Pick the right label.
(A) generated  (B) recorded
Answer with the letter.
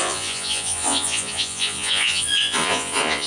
A